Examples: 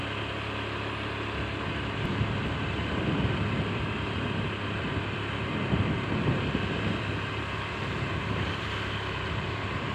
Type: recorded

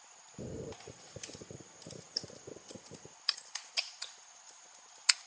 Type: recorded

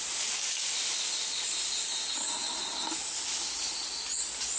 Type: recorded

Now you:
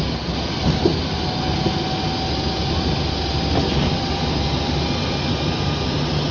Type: recorded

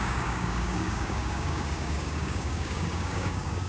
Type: remade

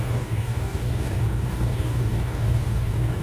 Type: remade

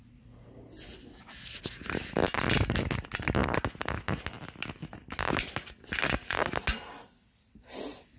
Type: recorded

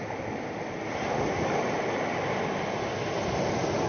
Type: recorded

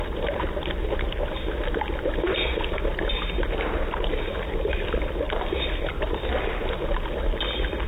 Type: recorded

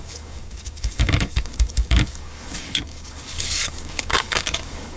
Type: remade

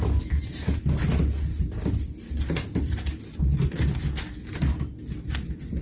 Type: recorded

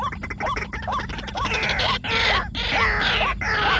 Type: recorded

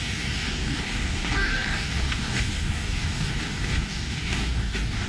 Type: remade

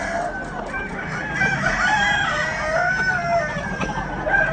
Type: recorded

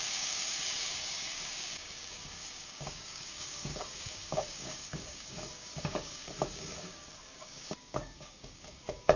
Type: remade